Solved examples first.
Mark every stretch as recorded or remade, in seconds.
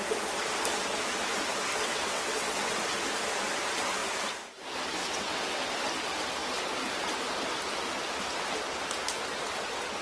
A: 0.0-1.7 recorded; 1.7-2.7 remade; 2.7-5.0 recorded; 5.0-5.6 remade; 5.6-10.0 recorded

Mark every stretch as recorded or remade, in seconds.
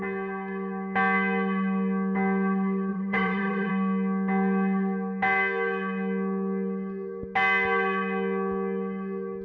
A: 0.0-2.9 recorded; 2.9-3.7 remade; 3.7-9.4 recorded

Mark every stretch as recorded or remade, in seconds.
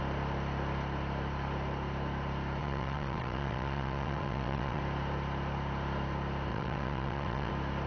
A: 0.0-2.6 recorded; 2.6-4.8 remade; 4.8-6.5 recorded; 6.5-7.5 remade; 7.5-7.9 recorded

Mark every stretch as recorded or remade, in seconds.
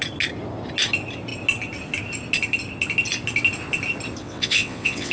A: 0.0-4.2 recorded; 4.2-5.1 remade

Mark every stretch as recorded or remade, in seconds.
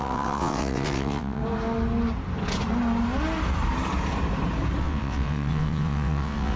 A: 0.0-1.4 remade; 1.4-4.8 recorded; 4.8-6.6 remade